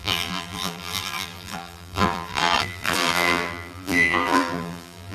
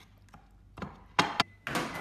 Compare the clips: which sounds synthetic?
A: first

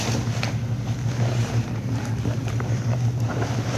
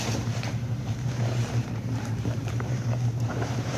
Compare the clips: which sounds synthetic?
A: second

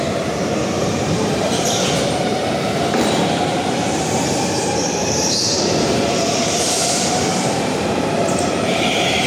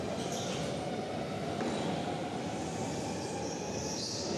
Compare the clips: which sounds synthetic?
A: first